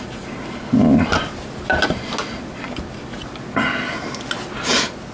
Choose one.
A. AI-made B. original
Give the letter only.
B